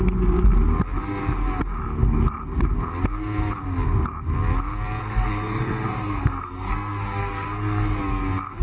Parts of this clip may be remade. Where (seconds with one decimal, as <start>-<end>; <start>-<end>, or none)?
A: 5.0-8.0